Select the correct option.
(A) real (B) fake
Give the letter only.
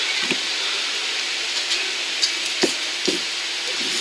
A